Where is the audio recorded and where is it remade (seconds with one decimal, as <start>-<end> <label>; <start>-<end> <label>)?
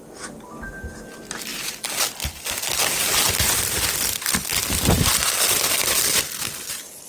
0.0-7.1 recorded